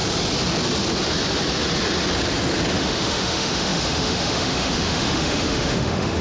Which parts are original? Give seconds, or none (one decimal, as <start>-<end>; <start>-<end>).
0.0-2.7